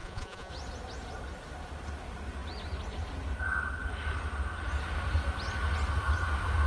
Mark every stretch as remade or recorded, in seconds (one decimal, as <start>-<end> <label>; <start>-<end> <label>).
0.0-0.5 remade; 0.5-6.7 recorded